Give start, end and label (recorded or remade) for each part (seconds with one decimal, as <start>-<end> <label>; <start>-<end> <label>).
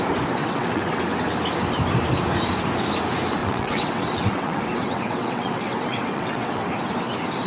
0.0-0.4 recorded; 0.4-1.0 remade; 1.0-3.4 recorded; 3.4-6.6 remade; 6.6-7.5 recorded